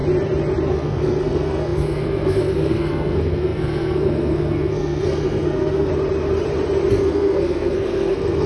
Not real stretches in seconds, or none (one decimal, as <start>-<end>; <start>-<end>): 0.7-5.9; 6.9-8.5